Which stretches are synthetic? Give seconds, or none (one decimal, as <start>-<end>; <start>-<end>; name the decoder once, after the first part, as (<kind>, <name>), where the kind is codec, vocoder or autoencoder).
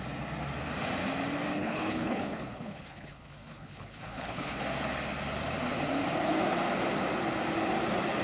1.5-4.6 (codec, HILCodec)